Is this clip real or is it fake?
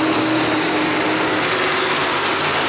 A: real